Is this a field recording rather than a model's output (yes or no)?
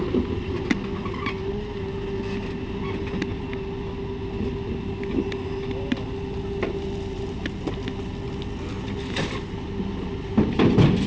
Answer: yes